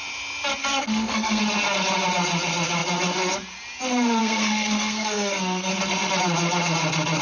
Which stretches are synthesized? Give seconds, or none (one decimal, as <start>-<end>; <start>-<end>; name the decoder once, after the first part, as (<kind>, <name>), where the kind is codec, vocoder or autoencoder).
0.6-1.4 (codec, SNAC); 4.2-5.7